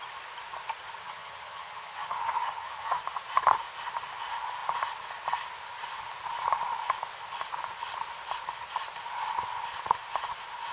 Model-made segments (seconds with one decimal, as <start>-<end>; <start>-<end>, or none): 1.0-3.0